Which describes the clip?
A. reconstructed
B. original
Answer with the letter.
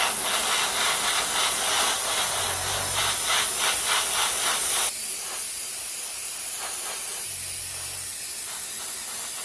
B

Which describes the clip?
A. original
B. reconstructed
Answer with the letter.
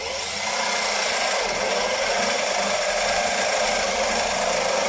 A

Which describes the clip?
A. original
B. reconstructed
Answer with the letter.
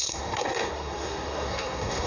B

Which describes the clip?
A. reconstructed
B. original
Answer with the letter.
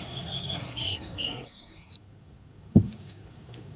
A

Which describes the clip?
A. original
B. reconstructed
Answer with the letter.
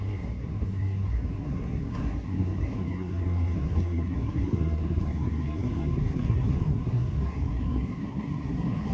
B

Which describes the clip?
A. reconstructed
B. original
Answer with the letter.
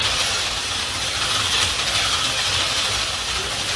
B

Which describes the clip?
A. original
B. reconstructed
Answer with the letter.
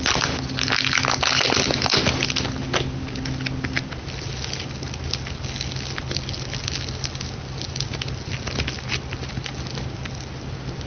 A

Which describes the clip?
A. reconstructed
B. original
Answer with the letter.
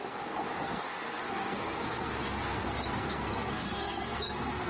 A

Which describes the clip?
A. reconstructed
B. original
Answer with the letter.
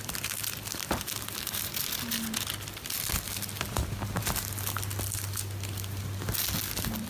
B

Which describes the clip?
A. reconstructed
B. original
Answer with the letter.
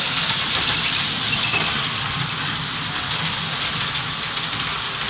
B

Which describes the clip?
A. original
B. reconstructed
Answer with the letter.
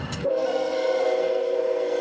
B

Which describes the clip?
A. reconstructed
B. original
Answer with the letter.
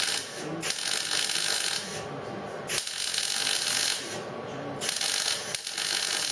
B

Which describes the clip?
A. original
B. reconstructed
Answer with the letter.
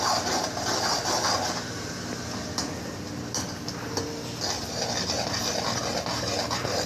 A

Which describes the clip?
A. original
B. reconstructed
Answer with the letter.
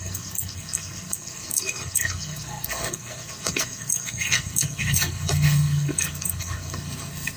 B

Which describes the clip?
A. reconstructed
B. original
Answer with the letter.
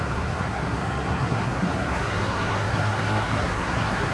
A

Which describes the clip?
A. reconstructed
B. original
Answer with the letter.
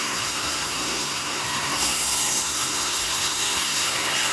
A